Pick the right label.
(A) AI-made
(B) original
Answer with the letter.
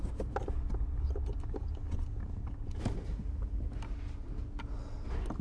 B